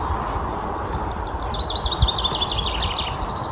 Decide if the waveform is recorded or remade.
recorded